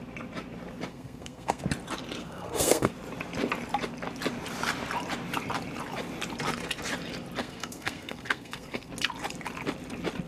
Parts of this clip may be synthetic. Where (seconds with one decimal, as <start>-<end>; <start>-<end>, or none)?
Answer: 0.9-1.6; 2.2-2.9; 7.4-8.9